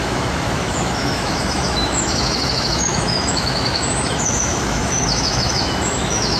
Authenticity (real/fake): fake